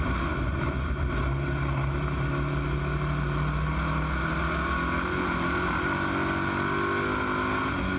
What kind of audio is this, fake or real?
real